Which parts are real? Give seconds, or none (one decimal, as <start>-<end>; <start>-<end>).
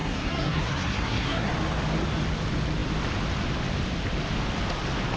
1.5-5.2